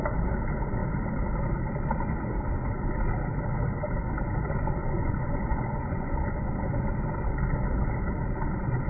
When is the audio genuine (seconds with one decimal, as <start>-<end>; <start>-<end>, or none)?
0.0-4.8; 6.5-8.9